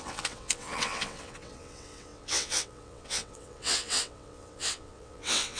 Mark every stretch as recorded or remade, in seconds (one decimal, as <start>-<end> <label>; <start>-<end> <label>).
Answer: 0.0-5.6 remade